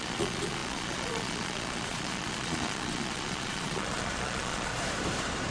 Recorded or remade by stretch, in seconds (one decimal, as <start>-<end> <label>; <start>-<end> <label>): 0.0-4.7 remade; 4.7-5.5 recorded